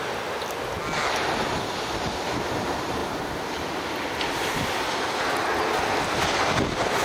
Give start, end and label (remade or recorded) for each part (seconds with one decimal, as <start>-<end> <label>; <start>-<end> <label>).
0.0-7.0 recorded